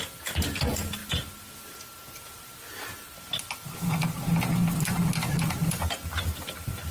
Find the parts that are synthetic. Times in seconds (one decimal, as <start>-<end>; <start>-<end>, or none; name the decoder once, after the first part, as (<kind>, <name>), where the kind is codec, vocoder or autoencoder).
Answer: none